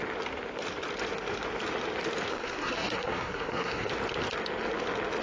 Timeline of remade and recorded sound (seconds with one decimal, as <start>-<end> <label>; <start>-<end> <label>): 0.0-2.3 recorded; 2.3-3.9 remade; 3.9-5.2 recorded